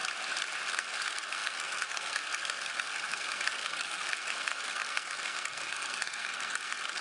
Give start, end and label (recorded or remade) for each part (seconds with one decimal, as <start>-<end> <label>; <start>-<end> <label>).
0.0-0.7 recorded; 0.7-7.0 remade